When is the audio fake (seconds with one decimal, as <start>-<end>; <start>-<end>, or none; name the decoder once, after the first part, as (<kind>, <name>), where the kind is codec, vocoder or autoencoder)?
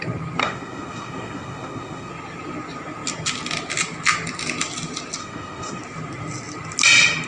0.4-2.1 (codec, SNAC); 5.2-5.8